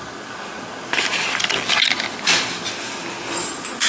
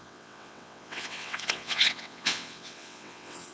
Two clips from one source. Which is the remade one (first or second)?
second